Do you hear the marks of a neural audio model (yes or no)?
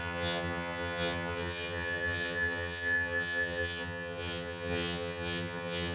yes